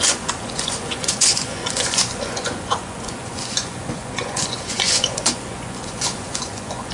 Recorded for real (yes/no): no